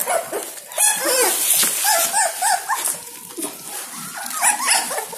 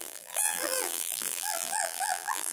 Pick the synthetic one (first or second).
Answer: second